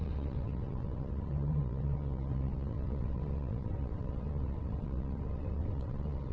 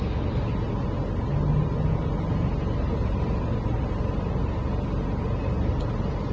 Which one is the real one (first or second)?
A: second